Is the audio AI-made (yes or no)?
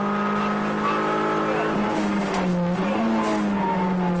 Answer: no